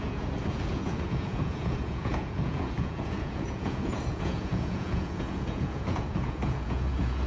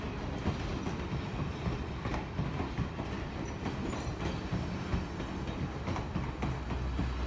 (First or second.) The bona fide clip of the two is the second